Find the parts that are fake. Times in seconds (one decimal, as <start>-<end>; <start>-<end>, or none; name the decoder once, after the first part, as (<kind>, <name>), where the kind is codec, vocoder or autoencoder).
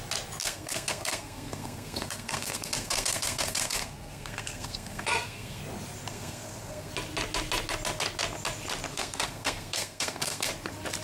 0.4-5.6 (codec, SNAC); 6.1-6.9; 8.9-10.5